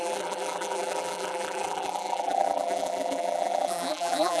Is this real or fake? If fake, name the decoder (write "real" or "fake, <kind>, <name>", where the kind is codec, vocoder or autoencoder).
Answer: fake, vocoder, BigVGAN v2